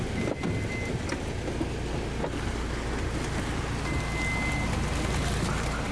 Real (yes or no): yes